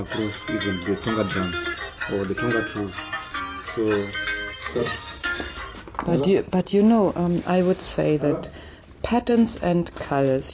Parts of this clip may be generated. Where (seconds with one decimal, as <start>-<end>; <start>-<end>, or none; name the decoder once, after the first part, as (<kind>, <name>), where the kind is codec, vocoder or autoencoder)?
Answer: 4.5-5.4 (codec, SNAC)